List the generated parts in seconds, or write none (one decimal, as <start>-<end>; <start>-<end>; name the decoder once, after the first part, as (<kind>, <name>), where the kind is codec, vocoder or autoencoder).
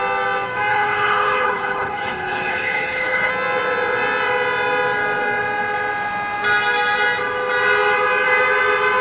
0.7-3.3 (codec, HILCodec)